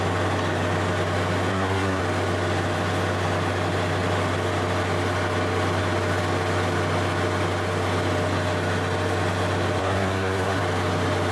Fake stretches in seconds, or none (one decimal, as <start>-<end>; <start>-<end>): 1.5-2.0; 9.8-10.6